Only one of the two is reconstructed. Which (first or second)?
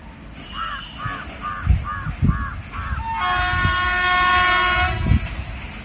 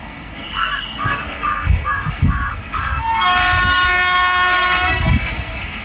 second